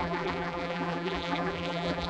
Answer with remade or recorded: remade